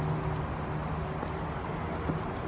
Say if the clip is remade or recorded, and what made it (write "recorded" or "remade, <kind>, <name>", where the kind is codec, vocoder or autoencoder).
recorded